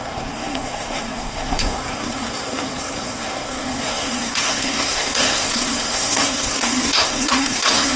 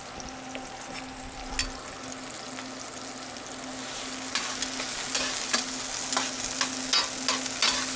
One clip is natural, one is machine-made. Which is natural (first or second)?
second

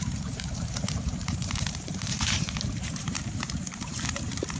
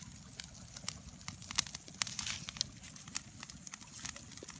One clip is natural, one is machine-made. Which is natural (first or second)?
second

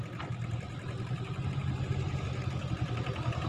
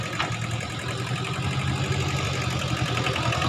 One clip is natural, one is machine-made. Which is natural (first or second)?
second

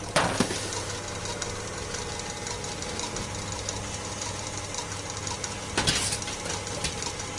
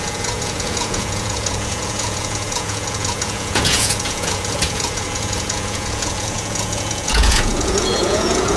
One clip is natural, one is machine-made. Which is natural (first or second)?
first